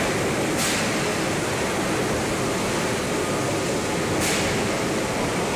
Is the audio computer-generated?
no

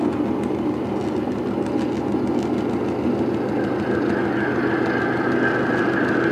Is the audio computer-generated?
no